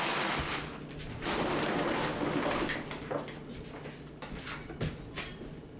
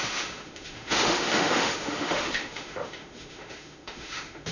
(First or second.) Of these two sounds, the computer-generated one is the second